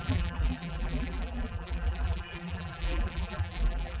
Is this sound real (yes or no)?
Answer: no